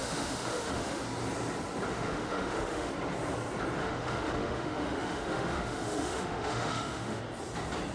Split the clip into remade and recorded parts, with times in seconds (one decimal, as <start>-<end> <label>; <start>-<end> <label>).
0.0-1.0 remade; 1.0-1.9 recorded; 1.9-2.9 remade; 2.9-3.8 recorded; 3.8-7.2 remade; 7.2-7.9 recorded